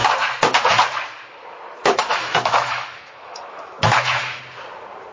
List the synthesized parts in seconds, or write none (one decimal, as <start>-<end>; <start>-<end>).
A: 1.8-4.4

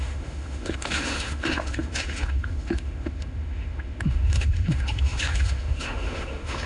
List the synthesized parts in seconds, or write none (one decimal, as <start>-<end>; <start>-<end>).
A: 0.0-6.7

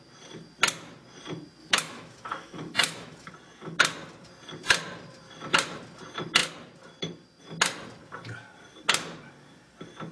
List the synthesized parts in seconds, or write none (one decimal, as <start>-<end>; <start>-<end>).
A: 1.6-3.3

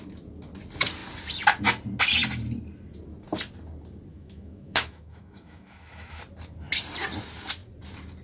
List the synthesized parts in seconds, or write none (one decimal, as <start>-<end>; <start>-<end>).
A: 4.1-6.2